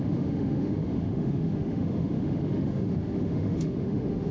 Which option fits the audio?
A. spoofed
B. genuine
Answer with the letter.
A